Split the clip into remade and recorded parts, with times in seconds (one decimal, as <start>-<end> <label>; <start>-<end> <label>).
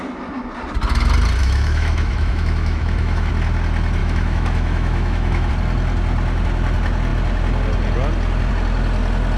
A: 0.0-1.4 recorded; 1.4-3.3 remade; 3.3-4.0 recorded; 4.0-5.5 remade; 5.5-9.4 recorded